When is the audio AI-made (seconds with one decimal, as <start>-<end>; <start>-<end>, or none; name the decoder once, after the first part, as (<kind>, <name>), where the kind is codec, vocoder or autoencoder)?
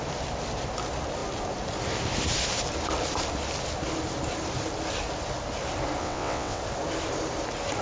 6.0-6.6 (vocoder, WaveNeXt)